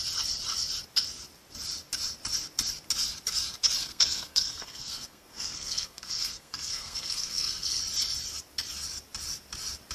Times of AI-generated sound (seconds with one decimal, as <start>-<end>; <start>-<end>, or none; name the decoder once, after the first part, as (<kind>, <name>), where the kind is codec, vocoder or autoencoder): 3.8-7.8 (codec, SNAC)